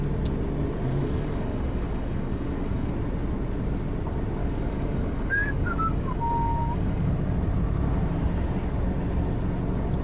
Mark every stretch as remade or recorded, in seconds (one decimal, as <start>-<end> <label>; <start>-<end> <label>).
0.0-1.0 recorded; 1.0-2.9 remade; 2.9-4.4 recorded; 4.4-7.1 remade; 7.1-10.0 recorded